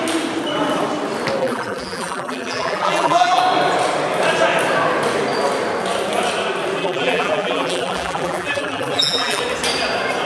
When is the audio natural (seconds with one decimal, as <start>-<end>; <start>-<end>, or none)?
0.0-1.4; 3.4-6.8; 9.4-10.3